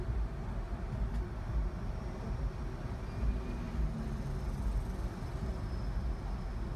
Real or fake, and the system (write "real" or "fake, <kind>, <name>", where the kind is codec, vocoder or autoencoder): real